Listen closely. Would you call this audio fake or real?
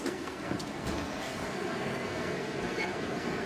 fake